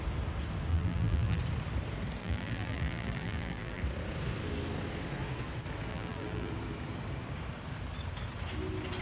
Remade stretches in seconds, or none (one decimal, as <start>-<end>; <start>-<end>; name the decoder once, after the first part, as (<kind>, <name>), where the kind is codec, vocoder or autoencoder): 0.7-1.4 (vocoder, BigVGAN v2); 2.2-3.8; 5.9-6.5